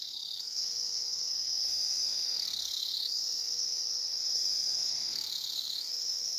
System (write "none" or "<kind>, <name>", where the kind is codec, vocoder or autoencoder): codec, SNAC